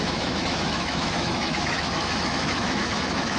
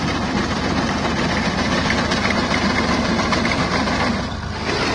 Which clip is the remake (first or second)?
first